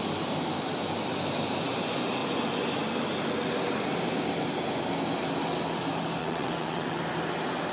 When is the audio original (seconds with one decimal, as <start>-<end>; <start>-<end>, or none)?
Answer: 0.0-6.2; 7.0-7.7